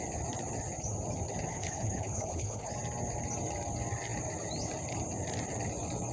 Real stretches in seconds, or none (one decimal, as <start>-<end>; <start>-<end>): 0.0-1.5; 2.7-6.1

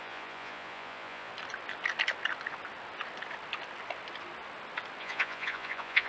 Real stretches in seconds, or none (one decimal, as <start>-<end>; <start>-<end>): 1.3-5.0

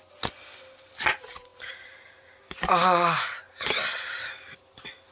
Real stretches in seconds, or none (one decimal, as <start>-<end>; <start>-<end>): 0.0-5.1